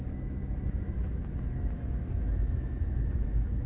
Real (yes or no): no